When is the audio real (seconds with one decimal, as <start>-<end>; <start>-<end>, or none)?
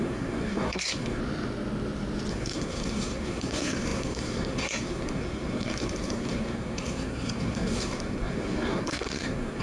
1.2-2.3